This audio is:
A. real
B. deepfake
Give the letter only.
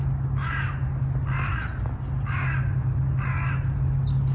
A